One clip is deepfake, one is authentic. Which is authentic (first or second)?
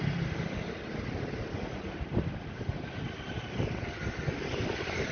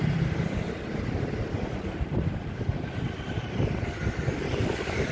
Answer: first